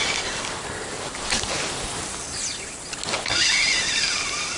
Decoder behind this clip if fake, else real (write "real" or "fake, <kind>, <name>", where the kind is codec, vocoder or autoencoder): real